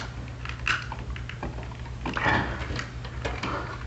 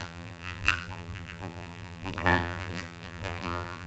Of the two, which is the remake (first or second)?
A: second